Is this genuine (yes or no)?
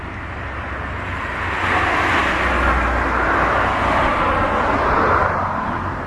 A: yes